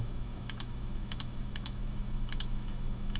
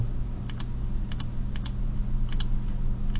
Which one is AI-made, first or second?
first